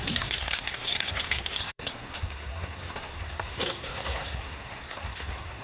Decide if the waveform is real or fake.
fake